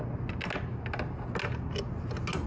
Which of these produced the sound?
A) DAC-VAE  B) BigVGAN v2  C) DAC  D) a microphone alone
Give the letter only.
D